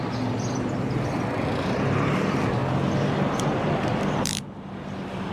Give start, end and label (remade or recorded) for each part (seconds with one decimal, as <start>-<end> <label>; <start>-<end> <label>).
0.0-5.3 recorded